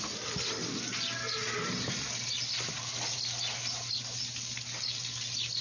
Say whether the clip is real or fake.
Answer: real